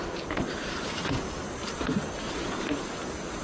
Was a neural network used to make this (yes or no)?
no